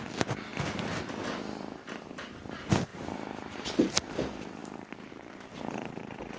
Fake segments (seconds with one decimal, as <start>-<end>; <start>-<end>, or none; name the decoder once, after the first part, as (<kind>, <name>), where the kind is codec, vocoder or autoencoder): none